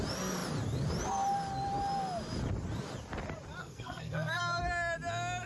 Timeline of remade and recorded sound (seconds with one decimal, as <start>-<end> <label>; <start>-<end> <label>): 0.0-3.6 recorded; 3.6-4.4 remade; 4.4-5.5 recorded